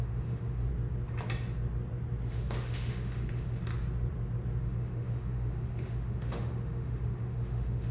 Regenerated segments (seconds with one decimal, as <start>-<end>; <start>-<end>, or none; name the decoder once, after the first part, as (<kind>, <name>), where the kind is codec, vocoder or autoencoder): 0.0-0.7 (autoencoder, DAC-VAE); 2.3-3.7; 4.6-7.9